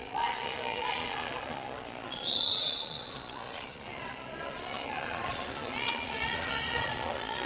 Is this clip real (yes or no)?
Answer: no